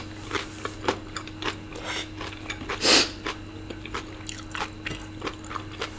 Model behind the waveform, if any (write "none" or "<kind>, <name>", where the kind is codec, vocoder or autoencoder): none